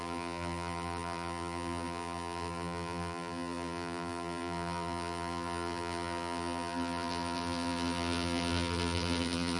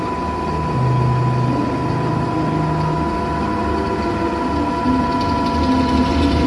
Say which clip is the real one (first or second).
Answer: second